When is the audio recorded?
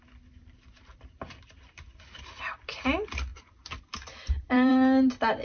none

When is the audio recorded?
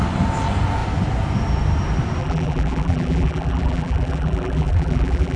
0.0-2.2